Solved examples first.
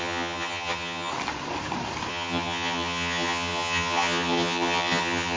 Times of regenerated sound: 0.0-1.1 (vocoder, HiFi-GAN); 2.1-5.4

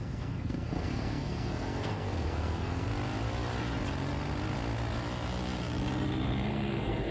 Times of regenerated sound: 0.0-2.9 (codec, SNAC); 6.5-7.1